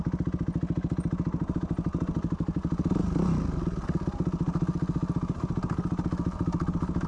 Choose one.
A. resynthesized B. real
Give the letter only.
B